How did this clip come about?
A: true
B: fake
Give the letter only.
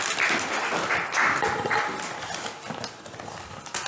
B